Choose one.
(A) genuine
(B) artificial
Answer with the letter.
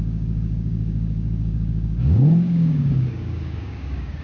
B